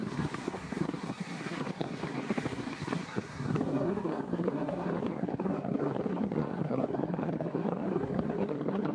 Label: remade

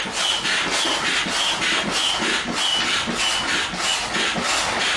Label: recorded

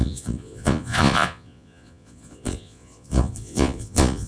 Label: remade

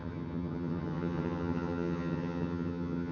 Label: remade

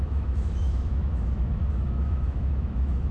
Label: remade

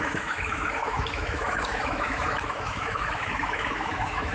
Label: remade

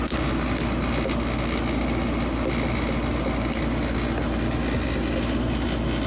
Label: recorded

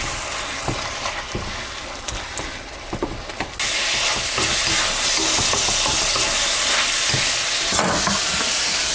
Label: recorded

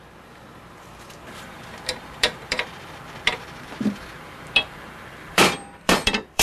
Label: remade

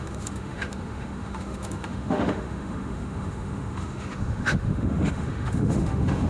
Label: remade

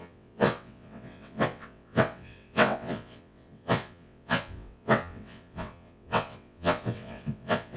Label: remade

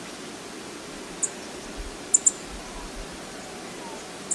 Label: recorded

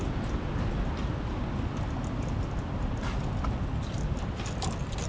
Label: recorded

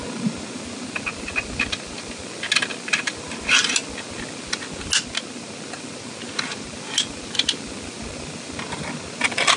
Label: recorded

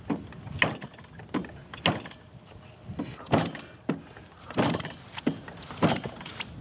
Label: recorded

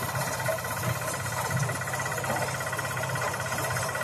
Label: remade